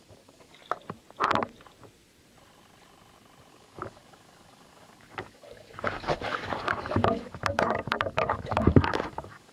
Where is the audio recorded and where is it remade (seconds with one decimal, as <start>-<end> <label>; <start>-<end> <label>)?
0.0-0.6 remade; 0.6-3.5 recorded; 3.5-9.5 remade